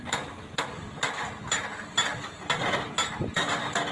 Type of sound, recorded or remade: recorded